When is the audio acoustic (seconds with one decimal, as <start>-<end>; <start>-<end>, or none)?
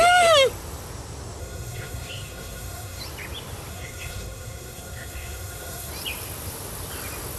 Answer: 0.0-1.4; 3.0-3.7; 5.9-7.4